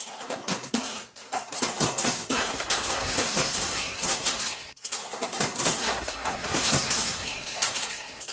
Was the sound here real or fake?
fake